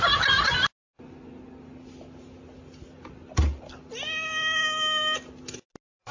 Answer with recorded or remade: recorded